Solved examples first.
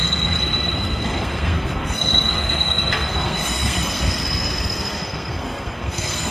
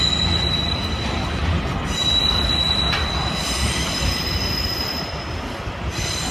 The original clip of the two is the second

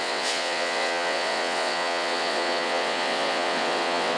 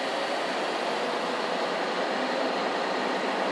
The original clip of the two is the second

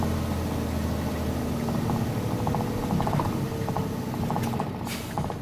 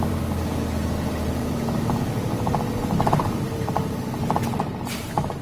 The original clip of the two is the first